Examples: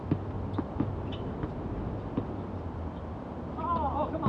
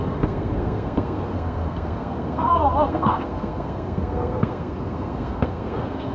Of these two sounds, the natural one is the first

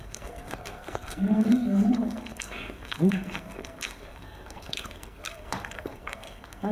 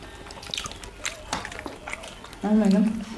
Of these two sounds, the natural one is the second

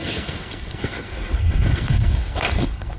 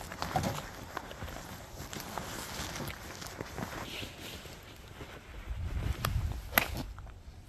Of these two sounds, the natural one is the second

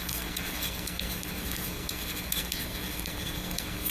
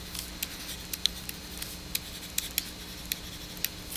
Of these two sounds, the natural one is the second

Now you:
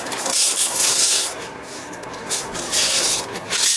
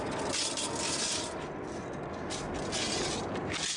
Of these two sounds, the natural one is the second